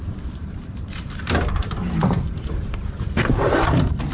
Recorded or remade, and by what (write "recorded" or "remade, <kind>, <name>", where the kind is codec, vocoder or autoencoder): remade, vocoder, BigVGAN v2